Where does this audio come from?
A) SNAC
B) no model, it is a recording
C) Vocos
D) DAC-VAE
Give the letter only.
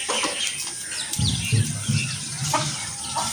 B